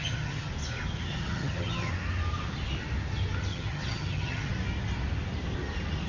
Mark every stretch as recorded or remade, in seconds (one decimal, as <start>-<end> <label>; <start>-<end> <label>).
0.0-0.5 remade; 0.5-1.1 recorded; 1.1-1.9 remade; 1.9-3.5 recorded; 3.5-4.5 remade; 4.5-6.1 recorded